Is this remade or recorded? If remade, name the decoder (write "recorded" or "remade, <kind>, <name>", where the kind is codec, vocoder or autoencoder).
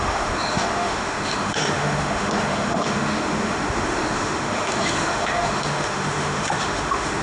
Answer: remade, autoencoder, DAC-VAE